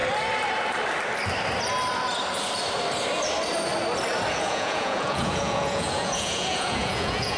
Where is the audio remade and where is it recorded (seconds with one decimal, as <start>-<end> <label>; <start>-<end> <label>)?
0.0-4.4 recorded; 4.4-7.4 remade